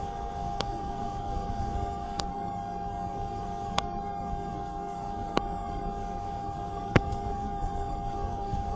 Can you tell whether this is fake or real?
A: fake